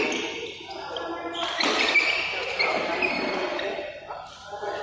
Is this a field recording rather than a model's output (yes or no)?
yes